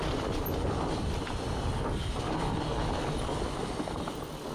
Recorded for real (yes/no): yes